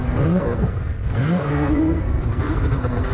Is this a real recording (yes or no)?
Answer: no